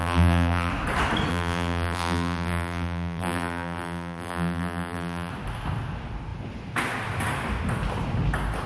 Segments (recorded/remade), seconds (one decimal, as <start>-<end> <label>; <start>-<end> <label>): 0.0-0.7 remade; 0.7-1.3 recorded; 1.3-5.3 remade; 5.3-8.7 recorded